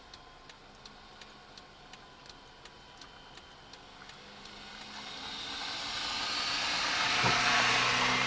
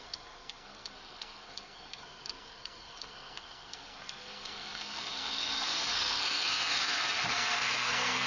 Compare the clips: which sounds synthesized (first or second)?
second